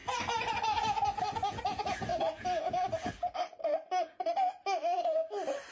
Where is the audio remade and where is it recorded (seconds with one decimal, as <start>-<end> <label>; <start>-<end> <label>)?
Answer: 0.0-5.7 recorded